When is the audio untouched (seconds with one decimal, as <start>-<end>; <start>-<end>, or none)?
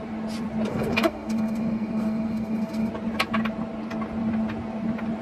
0.0-0.7; 2.9-5.2